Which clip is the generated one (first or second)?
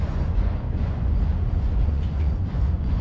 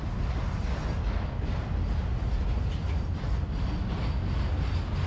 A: first